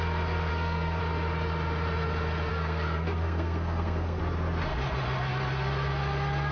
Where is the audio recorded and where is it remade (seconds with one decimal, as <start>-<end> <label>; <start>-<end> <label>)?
0.0-0.5 recorded; 0.5-1.0 remade; 1.0-2.5 recorded; 2.5-4.2 remade; 4.2-6.5 recorded